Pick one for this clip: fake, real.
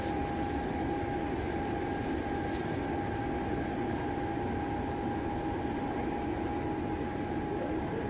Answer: real